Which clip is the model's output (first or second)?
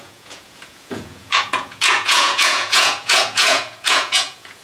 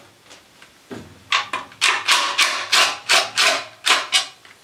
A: first